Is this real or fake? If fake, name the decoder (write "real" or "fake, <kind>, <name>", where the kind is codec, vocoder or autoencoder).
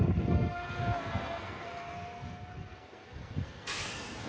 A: fake, codec, SNAC